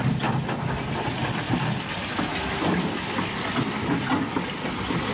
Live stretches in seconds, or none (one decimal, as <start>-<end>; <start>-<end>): 0.0-5.1

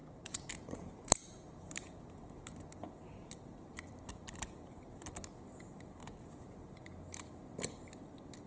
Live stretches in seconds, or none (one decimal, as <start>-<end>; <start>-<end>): 5.1-8.5